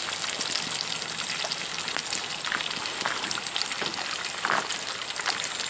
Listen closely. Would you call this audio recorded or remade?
recorded